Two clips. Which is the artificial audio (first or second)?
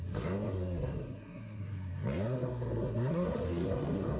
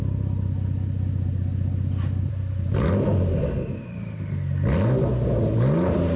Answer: first